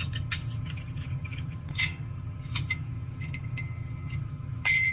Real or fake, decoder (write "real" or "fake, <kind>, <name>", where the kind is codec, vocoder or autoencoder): fake, vocoder, HiFi-GAN